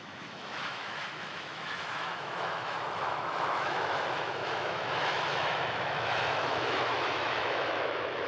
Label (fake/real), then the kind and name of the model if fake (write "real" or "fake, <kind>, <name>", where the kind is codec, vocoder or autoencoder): fake, autoencoder, DAC-VAE